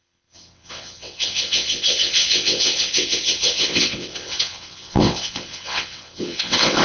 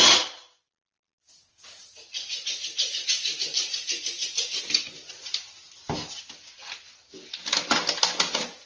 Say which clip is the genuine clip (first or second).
second